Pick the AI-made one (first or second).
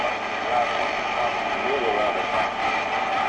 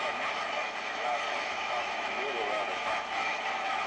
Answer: second